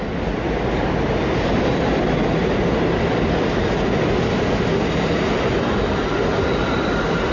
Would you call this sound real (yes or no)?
yes